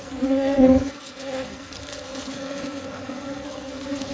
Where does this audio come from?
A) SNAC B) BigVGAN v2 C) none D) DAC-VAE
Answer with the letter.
A